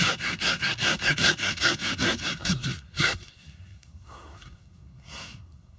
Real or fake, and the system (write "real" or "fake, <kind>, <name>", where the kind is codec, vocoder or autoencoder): fake, codec, SNAC